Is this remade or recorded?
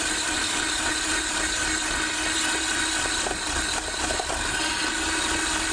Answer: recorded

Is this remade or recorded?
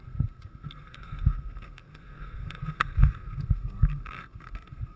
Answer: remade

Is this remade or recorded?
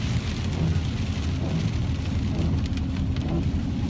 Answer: recorded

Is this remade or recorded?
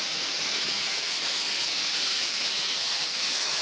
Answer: remade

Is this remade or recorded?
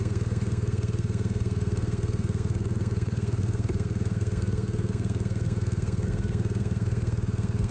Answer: remade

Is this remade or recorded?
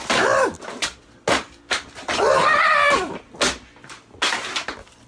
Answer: recorded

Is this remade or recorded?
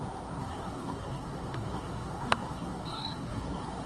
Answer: remade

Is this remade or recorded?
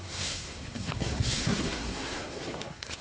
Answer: remade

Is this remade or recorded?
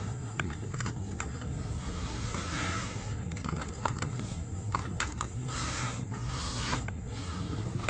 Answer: remade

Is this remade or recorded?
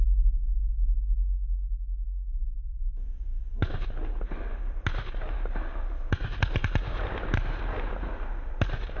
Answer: recorded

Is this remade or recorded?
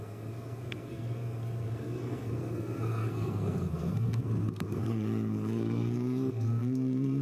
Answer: remade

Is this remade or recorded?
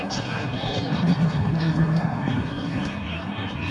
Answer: remade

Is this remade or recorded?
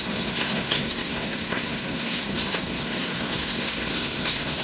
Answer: remade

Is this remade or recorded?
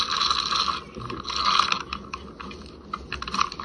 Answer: recorded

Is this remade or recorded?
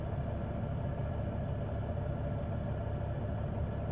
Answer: recorded